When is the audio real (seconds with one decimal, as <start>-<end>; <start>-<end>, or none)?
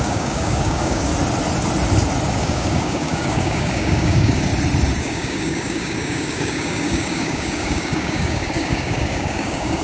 1.1-2.3; 4.5-5.0